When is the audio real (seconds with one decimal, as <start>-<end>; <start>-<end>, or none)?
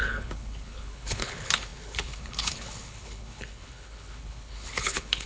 none